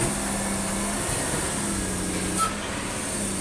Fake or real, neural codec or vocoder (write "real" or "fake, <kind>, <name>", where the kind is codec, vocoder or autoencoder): real